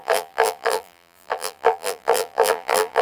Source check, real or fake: fake